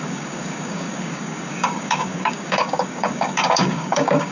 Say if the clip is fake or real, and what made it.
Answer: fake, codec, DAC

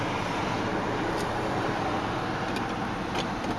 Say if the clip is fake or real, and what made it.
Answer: real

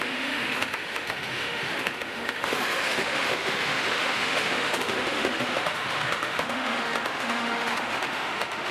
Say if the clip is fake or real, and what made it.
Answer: fake, autoencoder, DAC-VAE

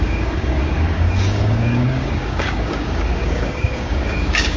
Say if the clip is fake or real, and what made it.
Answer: fake, codec, DAC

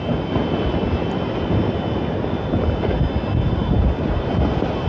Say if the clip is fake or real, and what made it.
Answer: real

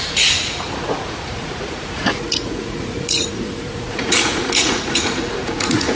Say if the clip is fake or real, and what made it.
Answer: fake, vocoder, Vocos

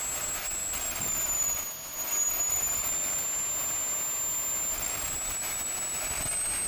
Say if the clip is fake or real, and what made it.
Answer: real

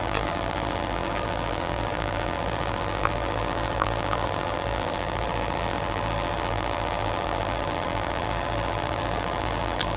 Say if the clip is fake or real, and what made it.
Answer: fake, vocoder, BigVGAN v2